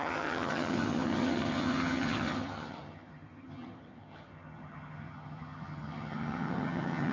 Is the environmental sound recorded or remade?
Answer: remade